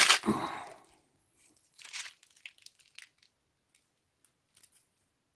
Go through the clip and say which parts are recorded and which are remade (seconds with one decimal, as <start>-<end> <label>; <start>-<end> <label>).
0.0-1.2 recorded; 1.2-2.1 remade; 2.1-5.4 recorded